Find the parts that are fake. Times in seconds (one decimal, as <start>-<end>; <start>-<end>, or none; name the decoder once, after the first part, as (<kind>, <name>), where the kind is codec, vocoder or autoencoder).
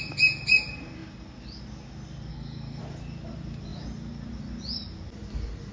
2.3-2.8 (codec, SNAC)